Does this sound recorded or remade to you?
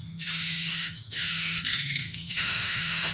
remade